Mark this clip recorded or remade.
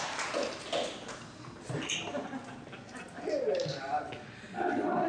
recorded